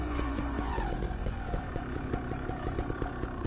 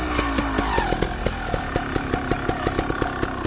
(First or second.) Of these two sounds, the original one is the second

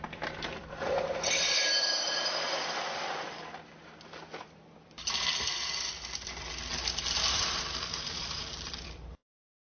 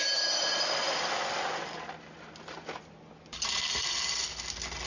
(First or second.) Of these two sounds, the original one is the second